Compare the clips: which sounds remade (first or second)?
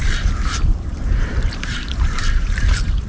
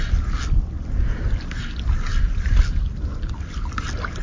first